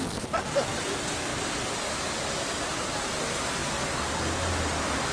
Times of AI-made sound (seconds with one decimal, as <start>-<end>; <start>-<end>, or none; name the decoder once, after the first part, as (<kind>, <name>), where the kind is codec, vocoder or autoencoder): none